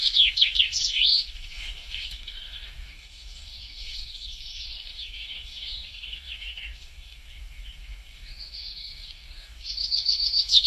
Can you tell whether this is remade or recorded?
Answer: remade